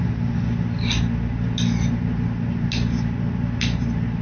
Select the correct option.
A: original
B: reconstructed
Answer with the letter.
A